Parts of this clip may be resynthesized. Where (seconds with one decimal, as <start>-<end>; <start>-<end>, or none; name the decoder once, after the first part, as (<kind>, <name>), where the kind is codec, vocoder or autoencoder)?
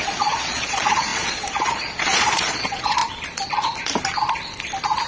0.0-3.0 (vocoder, Vocos)